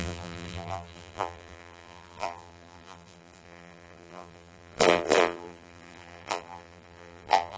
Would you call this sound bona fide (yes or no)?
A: no